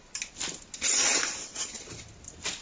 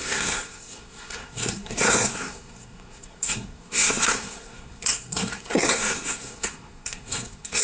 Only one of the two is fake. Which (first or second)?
second